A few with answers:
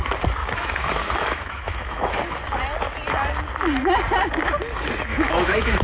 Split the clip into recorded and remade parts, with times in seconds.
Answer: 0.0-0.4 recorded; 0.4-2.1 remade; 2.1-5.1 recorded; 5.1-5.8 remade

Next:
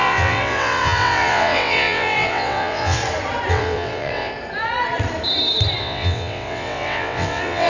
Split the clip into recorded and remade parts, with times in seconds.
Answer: 0.0-3.0 remade; 3.0-3.5 recorded; 3.5-4.3 remade; 4.3-5.8 recorded; 5.8-7.7 remade

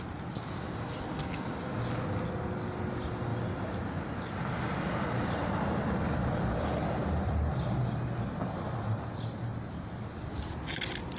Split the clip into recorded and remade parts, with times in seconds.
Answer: 0.0-11.2 recorded

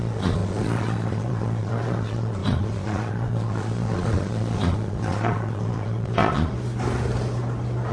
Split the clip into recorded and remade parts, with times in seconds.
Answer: 0.0-6.5 remade; 6.5-7.9 recorded